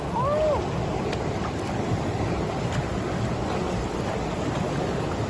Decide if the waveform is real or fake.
real